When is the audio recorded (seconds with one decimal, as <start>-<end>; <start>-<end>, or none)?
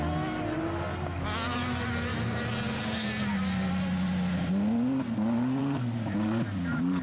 0.0-5.6